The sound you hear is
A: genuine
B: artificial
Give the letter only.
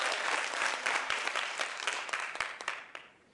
B